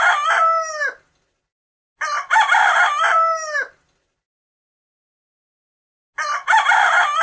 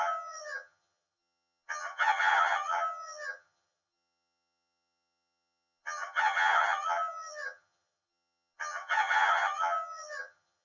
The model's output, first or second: second